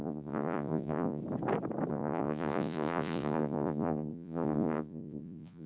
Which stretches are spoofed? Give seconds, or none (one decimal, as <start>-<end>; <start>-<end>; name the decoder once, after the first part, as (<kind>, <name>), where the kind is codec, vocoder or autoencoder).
0.0-1.2 (vocoder, Vocos); 1.9-5.7